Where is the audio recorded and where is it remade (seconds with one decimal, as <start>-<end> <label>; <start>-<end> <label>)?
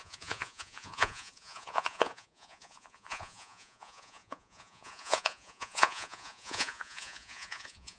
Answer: 0.0-8.0 remade